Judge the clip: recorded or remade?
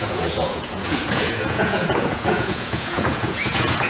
remade